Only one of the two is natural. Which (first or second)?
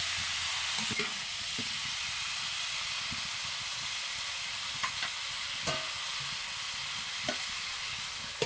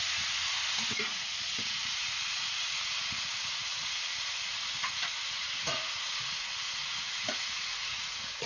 first